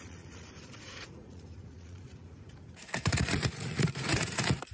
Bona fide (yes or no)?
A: no